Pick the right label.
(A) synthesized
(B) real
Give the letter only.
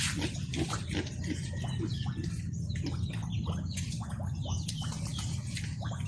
B